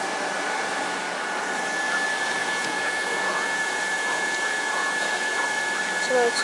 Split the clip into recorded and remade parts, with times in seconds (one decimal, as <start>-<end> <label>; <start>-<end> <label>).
0.0-2.4 recorded; 2.4-5.4 remade; 5.4-6.4 recorded